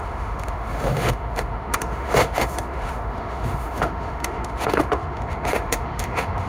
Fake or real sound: fake